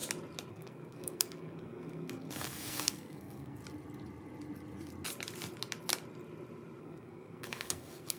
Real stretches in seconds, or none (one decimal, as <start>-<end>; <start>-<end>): 0.0-0.5; 3.6-6.8